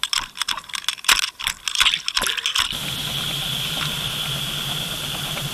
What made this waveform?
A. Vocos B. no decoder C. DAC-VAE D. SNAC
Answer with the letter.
B